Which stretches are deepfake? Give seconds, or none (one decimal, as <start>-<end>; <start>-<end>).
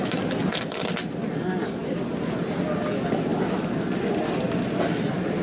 none